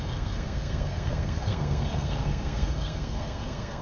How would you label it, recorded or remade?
remade